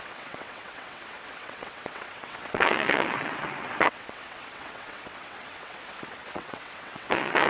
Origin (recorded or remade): remade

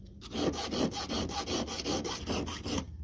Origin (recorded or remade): recorded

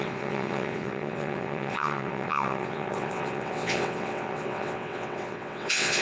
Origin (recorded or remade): remade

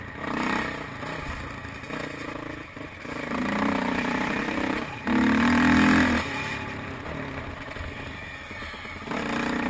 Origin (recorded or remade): recorded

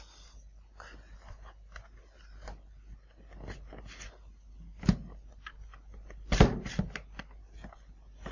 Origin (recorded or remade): recorded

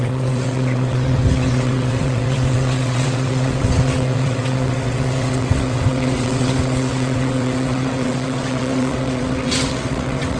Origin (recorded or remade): remade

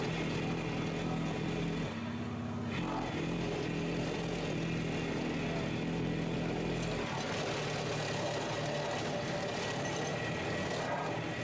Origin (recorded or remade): recorded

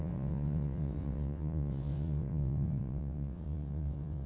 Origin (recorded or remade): remade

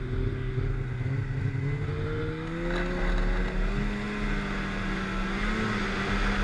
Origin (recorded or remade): recorded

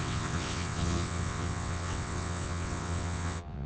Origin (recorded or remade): remade